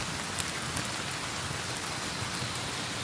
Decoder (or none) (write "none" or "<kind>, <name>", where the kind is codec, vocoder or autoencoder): none